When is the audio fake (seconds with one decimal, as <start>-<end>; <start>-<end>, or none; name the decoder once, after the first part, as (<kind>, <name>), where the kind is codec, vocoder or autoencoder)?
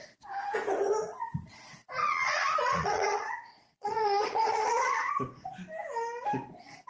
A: 2.0-5.1 (vocoder, Vocos)